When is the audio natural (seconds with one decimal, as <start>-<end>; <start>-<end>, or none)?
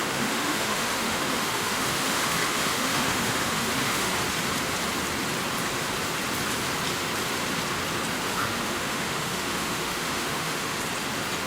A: 4.1-8.3; 10.8-11.5